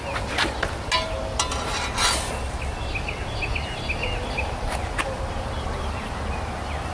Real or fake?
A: real